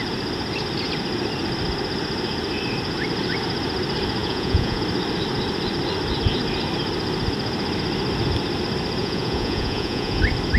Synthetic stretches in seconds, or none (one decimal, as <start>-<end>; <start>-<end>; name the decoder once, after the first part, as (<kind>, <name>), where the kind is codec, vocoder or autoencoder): 4.2-4.8 (vocoder, Vocos); 9.0-10.2